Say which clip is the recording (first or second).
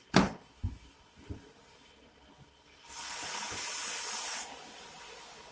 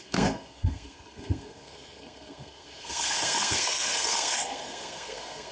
first